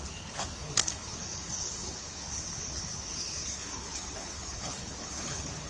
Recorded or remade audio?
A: remade